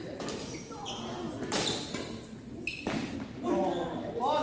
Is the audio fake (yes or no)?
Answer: no